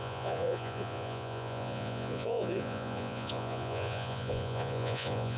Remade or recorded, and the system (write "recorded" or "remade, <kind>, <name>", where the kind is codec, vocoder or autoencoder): remade, vocoder, Vocos